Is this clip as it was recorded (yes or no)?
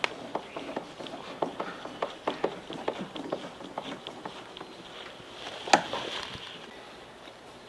yes